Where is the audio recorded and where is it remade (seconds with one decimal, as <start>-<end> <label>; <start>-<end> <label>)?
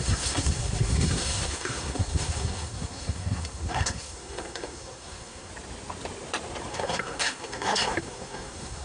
0.0-5.5 remade; 5.5-6.7 recorded; 6.7-8.8 remade